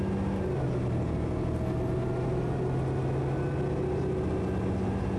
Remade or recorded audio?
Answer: recorded